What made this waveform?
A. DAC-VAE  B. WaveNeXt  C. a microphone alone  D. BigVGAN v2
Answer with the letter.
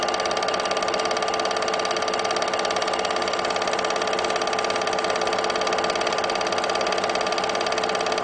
C